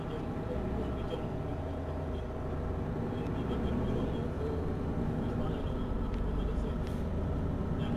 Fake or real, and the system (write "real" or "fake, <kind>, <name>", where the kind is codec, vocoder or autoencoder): real